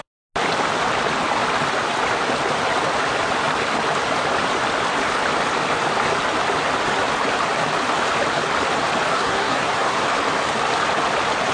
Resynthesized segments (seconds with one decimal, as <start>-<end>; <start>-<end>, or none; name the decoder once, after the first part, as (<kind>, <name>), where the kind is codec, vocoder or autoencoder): 9.1-10.0 (codec, SNAC)